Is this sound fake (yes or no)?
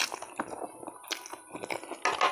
no